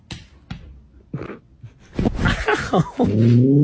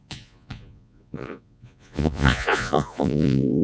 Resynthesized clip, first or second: second